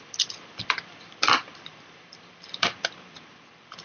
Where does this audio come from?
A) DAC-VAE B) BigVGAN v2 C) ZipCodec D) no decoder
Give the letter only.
B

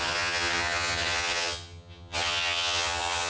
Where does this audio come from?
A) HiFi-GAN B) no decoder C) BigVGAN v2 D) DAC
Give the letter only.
A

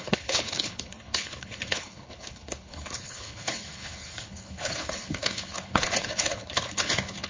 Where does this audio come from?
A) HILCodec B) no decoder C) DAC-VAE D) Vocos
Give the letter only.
A